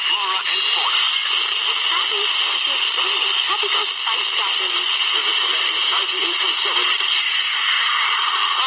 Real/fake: real